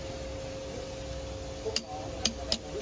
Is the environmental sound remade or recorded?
recorded